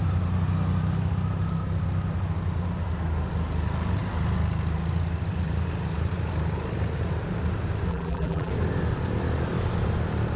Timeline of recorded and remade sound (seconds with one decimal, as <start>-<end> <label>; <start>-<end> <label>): 0.0-7.9 recorded; 7.9-8.5 remade; 8.5-10.4 recorded